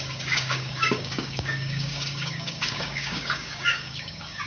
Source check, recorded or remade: remade